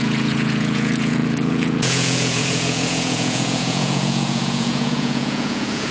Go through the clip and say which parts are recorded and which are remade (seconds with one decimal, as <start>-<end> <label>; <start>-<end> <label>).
0.0-5.9 remade